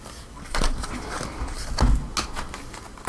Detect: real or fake real